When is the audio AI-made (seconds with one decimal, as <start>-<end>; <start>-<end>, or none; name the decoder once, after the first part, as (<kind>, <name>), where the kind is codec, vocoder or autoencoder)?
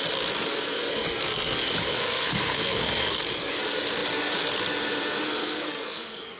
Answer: 1.9-3.2 (codec, SNAC); 5.4-6.4